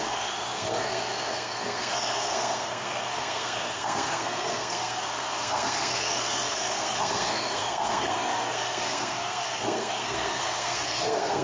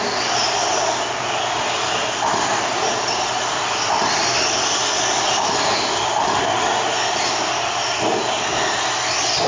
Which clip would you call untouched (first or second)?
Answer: second